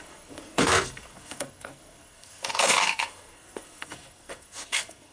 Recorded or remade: remade